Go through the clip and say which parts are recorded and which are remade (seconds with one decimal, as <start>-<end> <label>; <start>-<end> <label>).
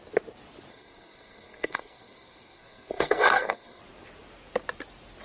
0.0-0.7 recorded; 0.7-3.8 remade; 3.8-5.2 recorded